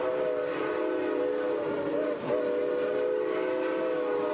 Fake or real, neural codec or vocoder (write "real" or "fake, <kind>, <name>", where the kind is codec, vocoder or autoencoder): real